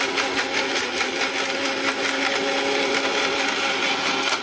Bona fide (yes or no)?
yes